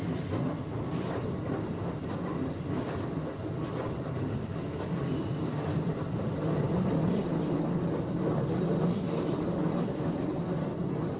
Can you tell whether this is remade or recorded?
recorded